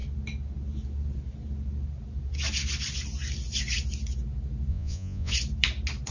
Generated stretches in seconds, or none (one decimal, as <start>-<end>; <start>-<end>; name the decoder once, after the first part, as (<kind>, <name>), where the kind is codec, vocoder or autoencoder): 4.7-5.3 (vocoder, Vocos)